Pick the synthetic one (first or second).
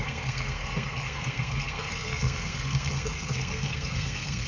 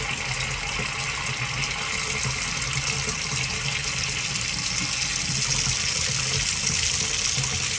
first